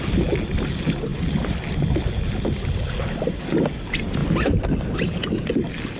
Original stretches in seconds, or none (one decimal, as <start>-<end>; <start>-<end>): 0.0-6.0